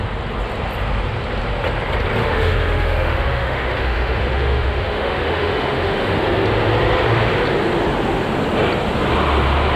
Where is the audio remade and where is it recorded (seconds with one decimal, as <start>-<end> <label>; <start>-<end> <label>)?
0.0-2.2 recorded; 2.2-6.2 remade; 6.2-9.8 recorded